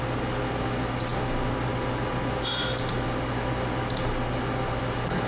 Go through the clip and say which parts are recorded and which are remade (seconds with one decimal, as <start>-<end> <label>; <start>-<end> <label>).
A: 0.0-5.3 recorded

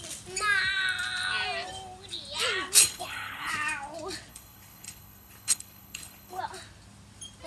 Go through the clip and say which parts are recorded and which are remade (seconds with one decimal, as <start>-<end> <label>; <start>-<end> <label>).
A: 0.0-2.8 recorded; 2.8-3.5 remade; 3.5-4.3 recorded; 4.3-6.4 remade; 6.4-7.5 recorded